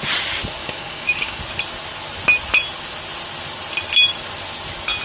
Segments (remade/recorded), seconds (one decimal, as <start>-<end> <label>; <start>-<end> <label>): 0.0-0.6 recorded; 0.6-1.4 remade; 1.4-5.0 recorded